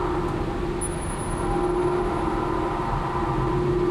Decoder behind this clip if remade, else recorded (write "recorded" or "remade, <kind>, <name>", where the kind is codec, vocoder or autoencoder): recorded